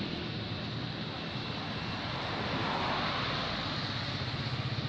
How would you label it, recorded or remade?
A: recorded